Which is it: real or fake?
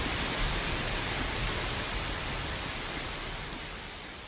fake